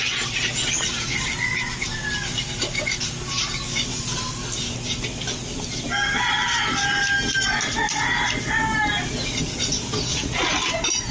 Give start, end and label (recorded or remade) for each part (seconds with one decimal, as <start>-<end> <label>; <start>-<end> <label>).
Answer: 0.0-10.1 recorded; 10.1-10.6 remade; 10.6-11.1 recorded